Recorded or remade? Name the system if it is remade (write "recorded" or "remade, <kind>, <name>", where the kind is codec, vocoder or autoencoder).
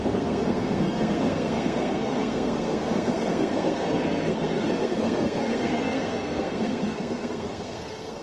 remade, codec, SNAC